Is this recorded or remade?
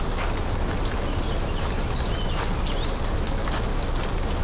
recorded